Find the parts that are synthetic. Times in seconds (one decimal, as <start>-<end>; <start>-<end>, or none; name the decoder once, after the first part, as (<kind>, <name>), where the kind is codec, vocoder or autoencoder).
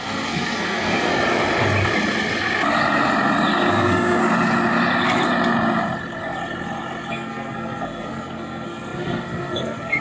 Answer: 0.0-1.1 (codec, SNAC); 3.7-4.2; 7.1-10.0